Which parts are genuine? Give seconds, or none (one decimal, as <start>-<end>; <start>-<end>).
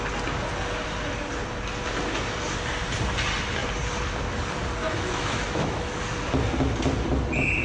0.0-4.8; 6.0-7.6